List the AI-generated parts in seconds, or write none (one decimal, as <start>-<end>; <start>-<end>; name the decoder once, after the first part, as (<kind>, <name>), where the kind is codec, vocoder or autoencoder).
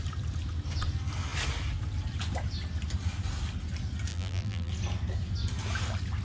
4.1-4.7 (vocoder, BigVGAN v2)